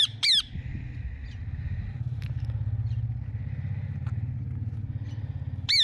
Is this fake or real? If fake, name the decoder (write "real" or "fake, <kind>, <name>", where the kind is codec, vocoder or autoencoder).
real